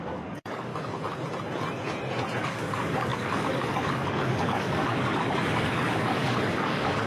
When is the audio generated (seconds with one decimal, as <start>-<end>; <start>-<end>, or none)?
0.0-0.7; 2.4-7.1